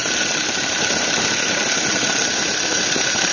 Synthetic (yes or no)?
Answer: no